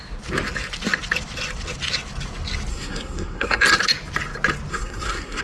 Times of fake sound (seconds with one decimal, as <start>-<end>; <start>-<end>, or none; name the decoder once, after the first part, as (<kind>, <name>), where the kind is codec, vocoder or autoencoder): 2.7-3.6 (codec, SNAC); 4.7-5.4